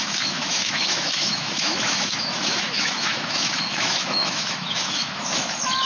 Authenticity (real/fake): fake